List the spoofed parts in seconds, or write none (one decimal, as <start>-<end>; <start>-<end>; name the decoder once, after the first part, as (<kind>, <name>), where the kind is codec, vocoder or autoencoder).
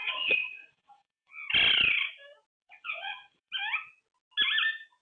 0.0-1.3 (vocoder, WaveNeXt); 2.6-3.5